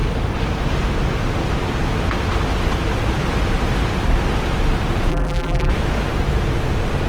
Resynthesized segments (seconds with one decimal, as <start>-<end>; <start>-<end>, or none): 5.1-5.7